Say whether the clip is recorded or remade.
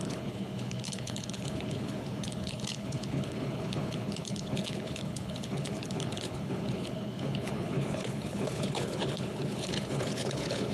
remade